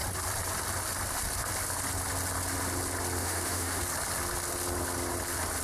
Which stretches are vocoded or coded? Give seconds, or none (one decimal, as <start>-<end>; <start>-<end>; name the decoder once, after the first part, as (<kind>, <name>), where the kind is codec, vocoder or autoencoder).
3.2-3.8 (autoencoder, DAC-VAE)